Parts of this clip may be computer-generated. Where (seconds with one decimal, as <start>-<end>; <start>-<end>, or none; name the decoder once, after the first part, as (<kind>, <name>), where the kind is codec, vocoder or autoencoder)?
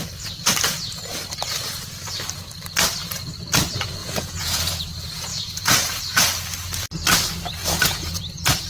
4.0-4.8 (vocoder, Vocos); 5.3-6.0; 7.6-8.2